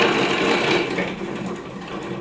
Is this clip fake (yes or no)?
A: no